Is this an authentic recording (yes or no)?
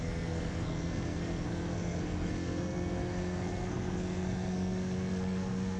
no